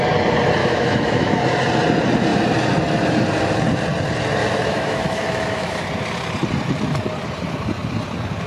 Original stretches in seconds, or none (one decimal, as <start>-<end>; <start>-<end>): 0.0-0.6; 1.4-4.4; 5.8-8.5